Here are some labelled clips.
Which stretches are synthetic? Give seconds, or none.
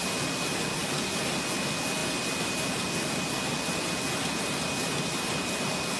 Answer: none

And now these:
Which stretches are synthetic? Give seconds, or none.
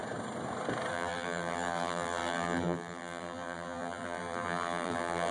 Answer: 0.9-5.3